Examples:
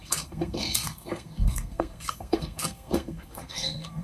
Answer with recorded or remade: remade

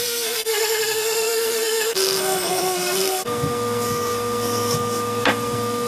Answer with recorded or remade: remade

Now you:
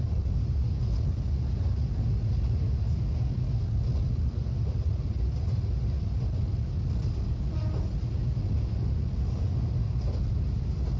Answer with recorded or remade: recorded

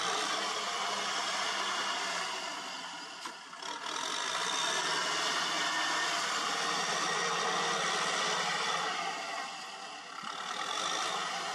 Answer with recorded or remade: recorded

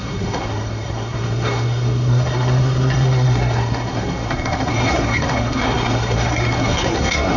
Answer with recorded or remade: remade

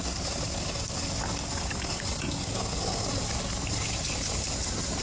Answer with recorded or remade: recorded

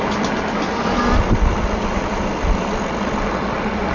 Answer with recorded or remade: recorded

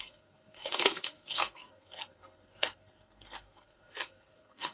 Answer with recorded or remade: remade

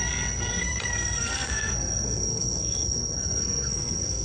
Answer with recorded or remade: remade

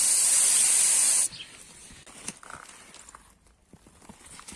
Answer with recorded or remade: recorded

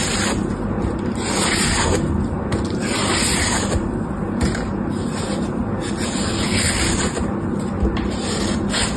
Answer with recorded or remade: recorded